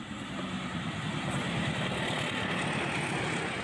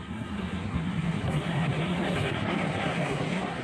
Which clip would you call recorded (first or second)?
first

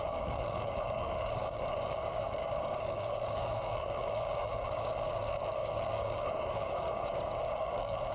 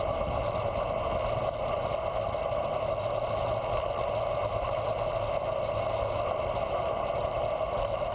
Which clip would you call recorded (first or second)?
second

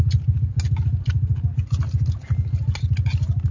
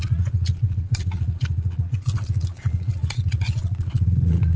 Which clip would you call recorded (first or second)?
first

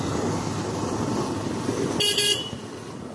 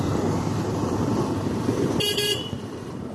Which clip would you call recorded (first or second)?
first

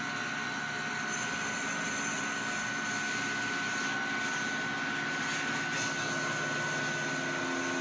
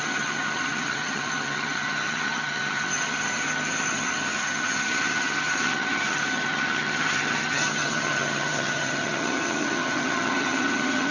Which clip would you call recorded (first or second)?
first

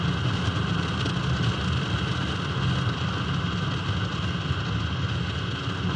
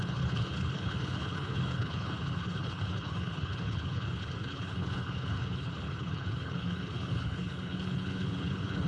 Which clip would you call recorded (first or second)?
first